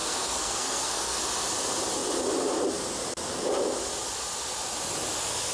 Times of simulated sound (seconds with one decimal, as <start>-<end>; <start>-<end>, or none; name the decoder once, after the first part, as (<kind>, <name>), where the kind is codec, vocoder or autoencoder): 0.0-1.2 (codec, SNAC)